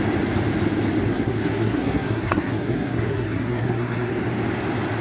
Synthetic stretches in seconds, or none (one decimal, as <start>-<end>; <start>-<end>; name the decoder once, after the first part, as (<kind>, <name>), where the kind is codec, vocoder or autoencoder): 1.1-4.1 (codec, SNAC)